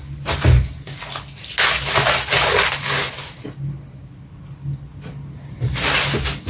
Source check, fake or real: real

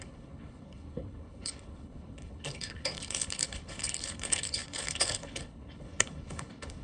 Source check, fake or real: fake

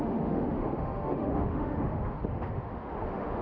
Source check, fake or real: fake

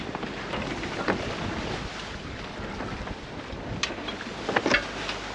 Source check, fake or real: real